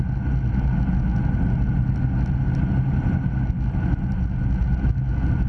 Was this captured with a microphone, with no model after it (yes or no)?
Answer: yes